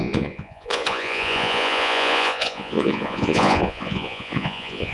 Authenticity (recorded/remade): remade